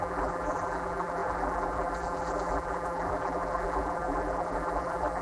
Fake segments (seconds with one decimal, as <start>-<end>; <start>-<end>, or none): 0.0-5.2